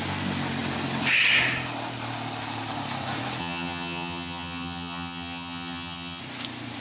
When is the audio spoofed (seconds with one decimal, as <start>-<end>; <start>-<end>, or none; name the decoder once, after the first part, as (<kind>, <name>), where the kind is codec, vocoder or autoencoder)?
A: 3.4-6.2 (vocoder, HiFi-GAN)